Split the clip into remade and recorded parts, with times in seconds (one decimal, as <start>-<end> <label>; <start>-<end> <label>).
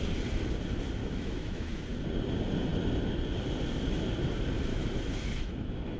0.0-1.0 recorded; 1.0-1.8 remade; 1.8-4.7 recorded; 4.7-6.0 remade